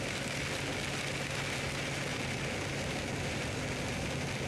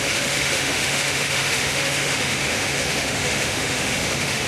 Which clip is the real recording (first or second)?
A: first